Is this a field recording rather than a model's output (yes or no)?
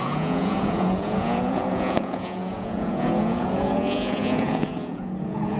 no